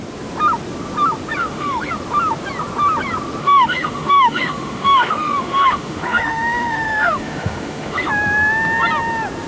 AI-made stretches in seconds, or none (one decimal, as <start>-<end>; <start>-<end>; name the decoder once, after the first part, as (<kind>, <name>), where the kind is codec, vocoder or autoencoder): 1.4-1.9 (autoencoder, DAC-VAE); 3.4-8.1